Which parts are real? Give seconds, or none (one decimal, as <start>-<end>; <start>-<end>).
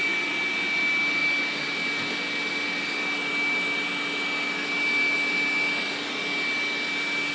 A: 0.0-7.3